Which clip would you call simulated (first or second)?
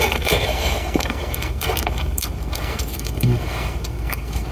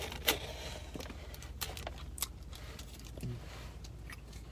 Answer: first